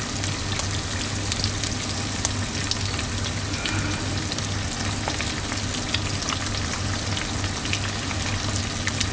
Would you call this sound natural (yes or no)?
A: yes